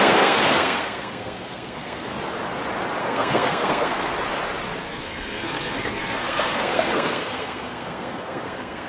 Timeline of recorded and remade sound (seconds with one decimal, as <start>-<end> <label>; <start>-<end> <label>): 0.0-2.0 remade; 2.0-3.0 recorded; 3.0-4.1 remade; 4.1-4.8 recorded; 4.8-8.9 remade